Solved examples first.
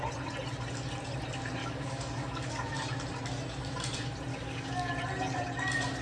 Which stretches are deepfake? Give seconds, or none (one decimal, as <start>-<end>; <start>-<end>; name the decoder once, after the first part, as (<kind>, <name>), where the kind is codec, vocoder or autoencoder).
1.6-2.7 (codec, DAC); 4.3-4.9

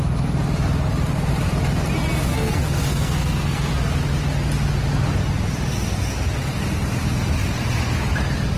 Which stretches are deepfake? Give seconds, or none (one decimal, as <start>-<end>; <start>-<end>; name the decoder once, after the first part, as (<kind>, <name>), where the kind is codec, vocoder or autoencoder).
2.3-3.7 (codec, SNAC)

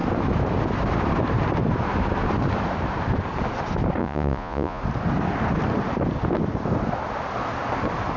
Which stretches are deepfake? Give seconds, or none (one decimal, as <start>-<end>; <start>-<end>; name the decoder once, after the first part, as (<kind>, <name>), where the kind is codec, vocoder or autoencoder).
4.0-4.8 (vocoder, Vocos)

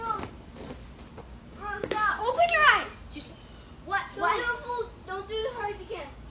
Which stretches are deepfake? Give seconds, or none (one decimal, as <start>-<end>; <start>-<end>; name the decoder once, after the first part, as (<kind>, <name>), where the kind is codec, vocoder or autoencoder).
1.3-2.7 (codec, DAC); 5.4-6.3

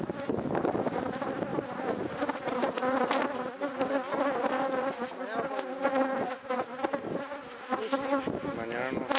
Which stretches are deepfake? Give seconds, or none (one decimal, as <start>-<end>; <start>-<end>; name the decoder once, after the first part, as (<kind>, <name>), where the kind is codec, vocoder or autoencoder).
none

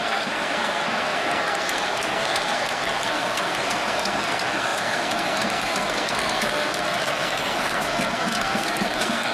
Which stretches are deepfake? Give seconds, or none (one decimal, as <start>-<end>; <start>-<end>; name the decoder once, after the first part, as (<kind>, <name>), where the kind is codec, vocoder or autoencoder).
0.0-9.3 (codec, SNAC)

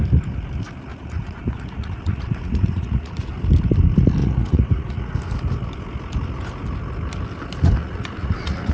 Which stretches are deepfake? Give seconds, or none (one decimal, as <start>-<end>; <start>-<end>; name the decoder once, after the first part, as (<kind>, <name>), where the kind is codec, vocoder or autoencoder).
0.9-3.3 (vocoder, Vocos); 4.2-5.1; 7.8-8.7